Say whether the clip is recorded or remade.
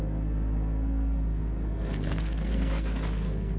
remade